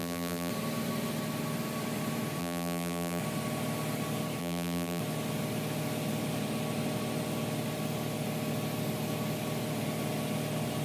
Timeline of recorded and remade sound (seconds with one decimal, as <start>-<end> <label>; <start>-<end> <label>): 0.0-0.5 remade; 0.5-2.4 recorded; 2.4-3.2 remade; 3.2-4.4 recorded; 4.4-5.0 remade; 5.0-10.8 recorded